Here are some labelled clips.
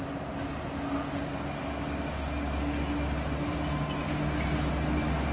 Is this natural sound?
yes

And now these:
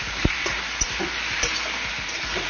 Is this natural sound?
yes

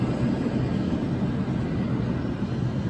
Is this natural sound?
yes